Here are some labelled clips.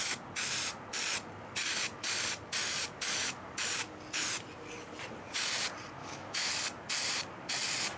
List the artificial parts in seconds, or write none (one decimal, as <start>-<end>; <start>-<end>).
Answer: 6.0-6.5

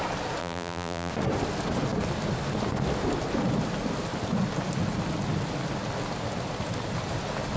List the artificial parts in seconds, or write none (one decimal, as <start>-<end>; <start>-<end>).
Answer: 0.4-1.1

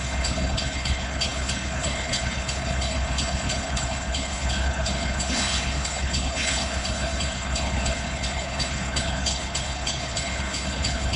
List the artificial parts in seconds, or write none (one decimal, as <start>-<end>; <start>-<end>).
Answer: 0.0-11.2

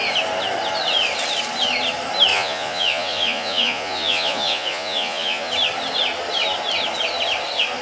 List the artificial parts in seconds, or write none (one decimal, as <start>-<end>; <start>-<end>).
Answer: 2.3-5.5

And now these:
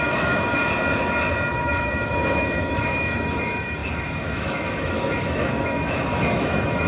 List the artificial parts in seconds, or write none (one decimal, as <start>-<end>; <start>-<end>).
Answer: 0.0-0.6; 1.5-6.9

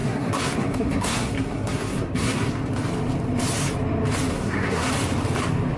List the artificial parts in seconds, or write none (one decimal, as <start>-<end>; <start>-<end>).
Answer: 0.0-2.5; 4.3-4.9